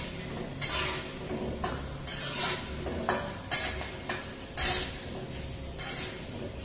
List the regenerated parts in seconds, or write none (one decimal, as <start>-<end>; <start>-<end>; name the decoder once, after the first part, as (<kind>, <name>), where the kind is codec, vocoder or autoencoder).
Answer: none

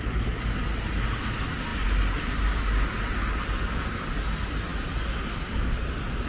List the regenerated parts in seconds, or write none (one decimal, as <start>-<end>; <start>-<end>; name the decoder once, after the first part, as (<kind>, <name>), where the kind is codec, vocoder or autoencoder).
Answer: none